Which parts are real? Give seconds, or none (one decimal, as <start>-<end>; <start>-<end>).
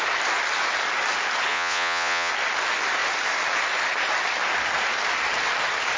0.0-1.5; 2.3-6.0